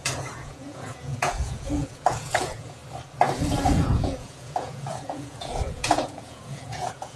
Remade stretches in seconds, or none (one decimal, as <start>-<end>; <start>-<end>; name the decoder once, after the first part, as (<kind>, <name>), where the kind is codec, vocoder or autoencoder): 0.0-2.8 (vocoder, Vocos); 3.7-7.2